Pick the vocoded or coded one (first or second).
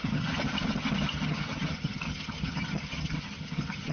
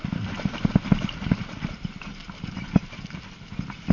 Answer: first